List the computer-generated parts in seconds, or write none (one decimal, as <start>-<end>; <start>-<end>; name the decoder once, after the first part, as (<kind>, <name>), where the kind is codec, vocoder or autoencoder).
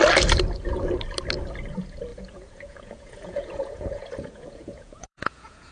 2.1-5.7 (vocoder, Vocos)